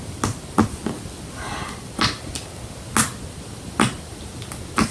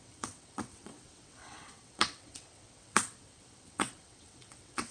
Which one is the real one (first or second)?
first